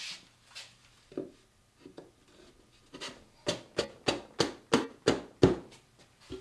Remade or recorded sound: recorded